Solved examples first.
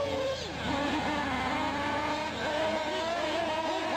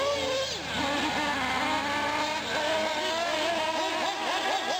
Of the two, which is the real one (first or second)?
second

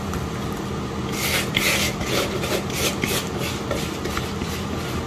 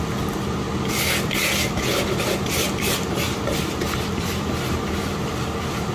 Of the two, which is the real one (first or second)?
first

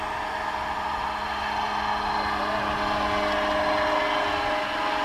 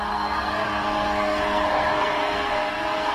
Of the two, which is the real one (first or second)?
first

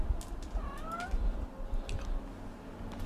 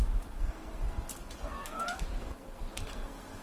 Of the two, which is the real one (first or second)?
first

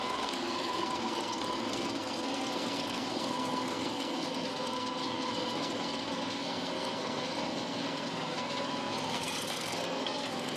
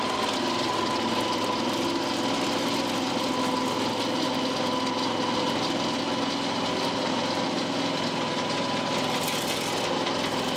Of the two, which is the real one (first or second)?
second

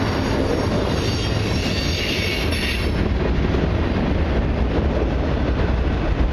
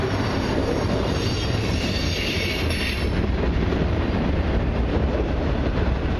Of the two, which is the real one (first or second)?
first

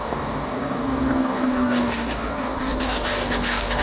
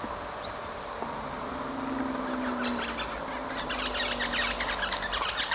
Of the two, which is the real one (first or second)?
second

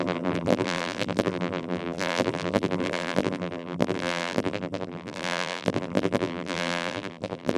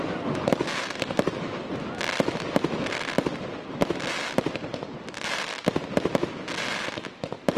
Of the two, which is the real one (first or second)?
second